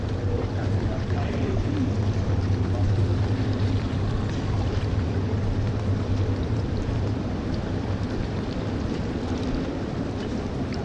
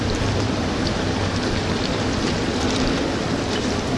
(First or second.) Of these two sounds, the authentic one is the second